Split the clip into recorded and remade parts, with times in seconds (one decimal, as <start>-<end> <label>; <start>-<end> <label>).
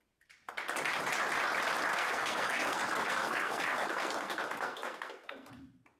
0.0-1.9 recorded; 1.9-5.5 remade; 5.5-6.0 recorded